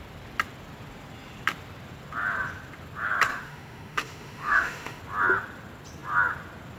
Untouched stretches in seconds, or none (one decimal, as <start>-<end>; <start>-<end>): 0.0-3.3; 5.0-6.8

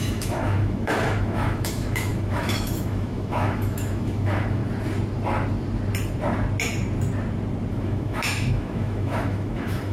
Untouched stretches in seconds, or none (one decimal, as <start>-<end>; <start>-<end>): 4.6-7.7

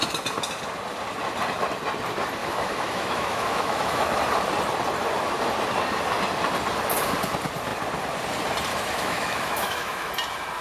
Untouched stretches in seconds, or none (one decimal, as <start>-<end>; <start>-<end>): 0.0-2.4; 4.2-8.7; 10.1-10.6